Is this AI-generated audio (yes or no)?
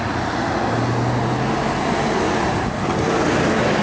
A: no